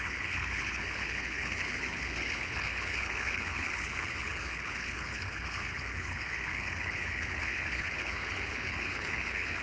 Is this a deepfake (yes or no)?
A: yes